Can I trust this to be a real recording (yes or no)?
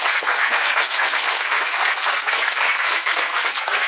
no